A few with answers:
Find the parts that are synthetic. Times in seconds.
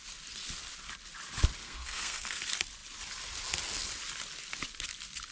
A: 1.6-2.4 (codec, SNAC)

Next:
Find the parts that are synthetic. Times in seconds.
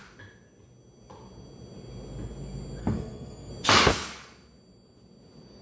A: 2.8-3.5 (codec, SNAC)